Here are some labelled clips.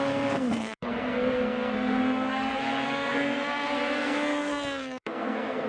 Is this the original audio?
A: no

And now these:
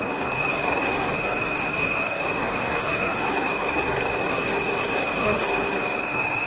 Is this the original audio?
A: no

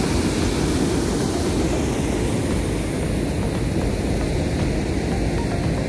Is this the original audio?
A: yes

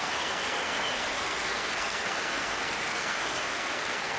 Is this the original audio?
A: no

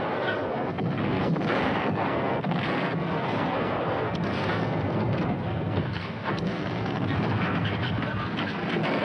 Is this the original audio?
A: no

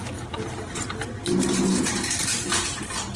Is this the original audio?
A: yes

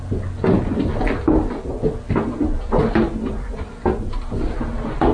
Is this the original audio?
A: yes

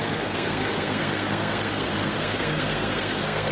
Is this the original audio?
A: no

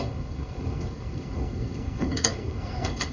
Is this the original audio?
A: no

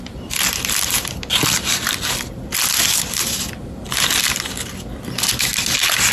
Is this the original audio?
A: yes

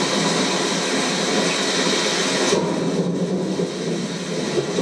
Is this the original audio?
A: yes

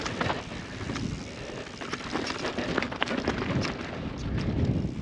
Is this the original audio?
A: yes